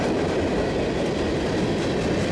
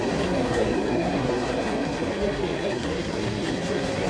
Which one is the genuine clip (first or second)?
first